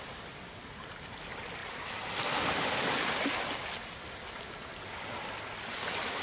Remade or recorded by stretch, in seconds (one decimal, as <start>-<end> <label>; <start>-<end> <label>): 0.0-6.2 recorded